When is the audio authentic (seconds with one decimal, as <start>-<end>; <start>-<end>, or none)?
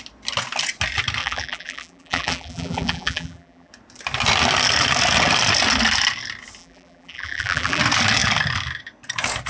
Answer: 0.0-1.2; 3.7-6.6; 7.8-9.5